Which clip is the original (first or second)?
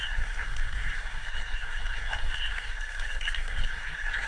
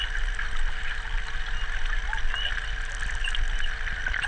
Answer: second